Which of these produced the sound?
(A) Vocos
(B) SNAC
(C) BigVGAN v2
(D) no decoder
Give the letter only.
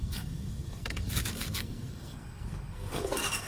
B